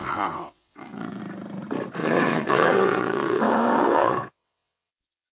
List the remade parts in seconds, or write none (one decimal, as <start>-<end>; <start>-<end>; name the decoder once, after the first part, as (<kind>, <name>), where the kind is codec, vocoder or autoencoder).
0.0-1.2 (vocoder, WaveNeXt); 2.0-5.3